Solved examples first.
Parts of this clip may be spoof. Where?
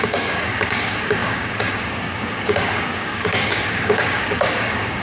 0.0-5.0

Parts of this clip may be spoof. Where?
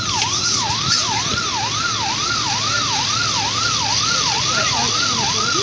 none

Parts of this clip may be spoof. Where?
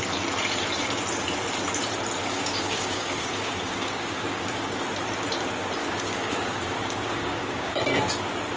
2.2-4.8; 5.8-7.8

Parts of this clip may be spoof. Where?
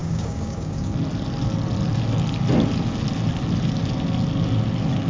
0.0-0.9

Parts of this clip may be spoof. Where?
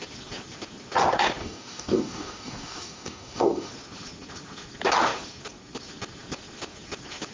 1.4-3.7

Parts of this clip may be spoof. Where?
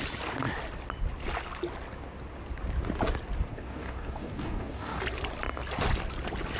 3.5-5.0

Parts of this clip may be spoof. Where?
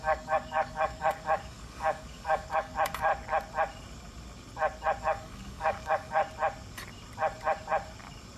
0.0-3.1; 5.0-6.2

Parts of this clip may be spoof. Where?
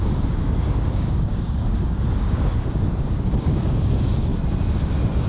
0.0-4.3